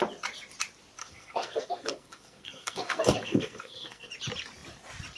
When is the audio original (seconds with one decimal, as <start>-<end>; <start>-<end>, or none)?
0.0-1.0; 4.1-5.2